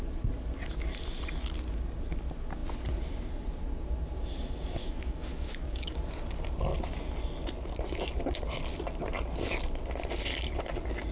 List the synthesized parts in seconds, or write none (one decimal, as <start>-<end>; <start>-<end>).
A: 4.8-6.0